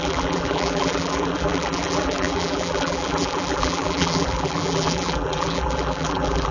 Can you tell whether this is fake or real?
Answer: fake